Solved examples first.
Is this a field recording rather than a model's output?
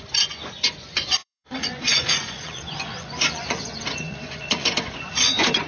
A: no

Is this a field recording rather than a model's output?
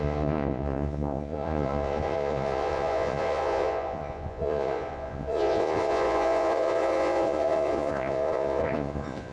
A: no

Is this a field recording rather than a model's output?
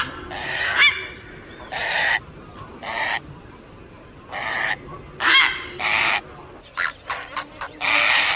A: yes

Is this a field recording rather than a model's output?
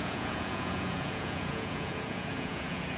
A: no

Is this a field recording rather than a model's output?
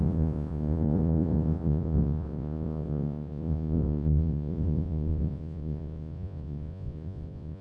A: no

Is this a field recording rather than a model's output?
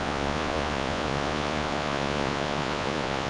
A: no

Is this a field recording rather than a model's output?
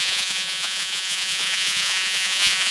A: no